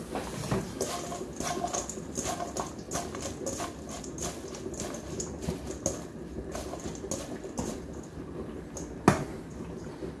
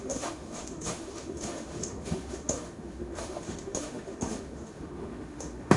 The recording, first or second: first